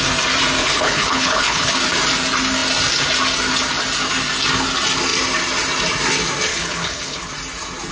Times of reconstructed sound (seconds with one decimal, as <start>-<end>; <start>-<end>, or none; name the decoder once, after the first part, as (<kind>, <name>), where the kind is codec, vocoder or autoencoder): 0.6-1.7 (codec, HILCodec); 6.5-7.3